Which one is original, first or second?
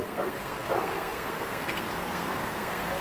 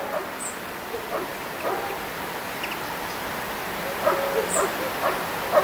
second